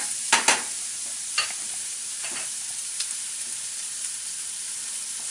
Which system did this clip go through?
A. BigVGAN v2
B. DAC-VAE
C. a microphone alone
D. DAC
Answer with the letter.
A